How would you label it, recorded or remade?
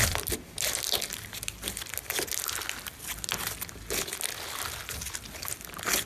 recorded